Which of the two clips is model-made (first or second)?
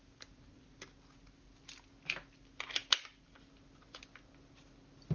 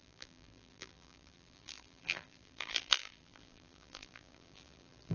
second